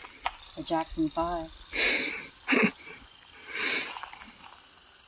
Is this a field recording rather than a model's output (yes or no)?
yes